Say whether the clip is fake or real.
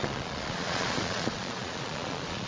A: fake